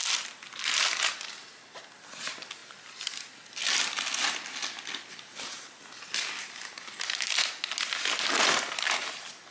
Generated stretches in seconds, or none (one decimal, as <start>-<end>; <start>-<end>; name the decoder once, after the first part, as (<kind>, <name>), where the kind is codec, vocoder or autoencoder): none